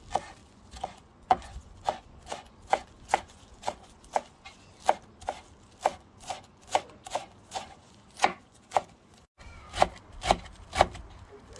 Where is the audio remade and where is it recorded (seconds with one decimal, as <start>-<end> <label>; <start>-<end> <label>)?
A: 0.0-0.4 recorded; 0.4-4.7 remade; 4.7-5.9 recorded; 5.9-9.8 remade; 9.8-11.6 recorded